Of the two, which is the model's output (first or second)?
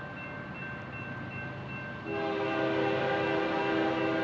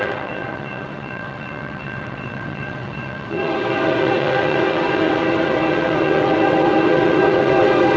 second